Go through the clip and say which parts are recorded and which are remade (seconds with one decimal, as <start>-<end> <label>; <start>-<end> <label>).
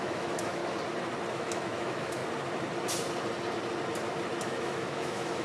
0.0-0.6 remade; 0.6-1.3 recorded; 1.3-2.2 remade; 2.2-4.4 recorded; 4.4-5.4 remade